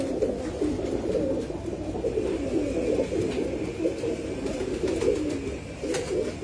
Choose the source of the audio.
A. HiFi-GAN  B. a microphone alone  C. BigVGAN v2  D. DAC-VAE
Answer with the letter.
B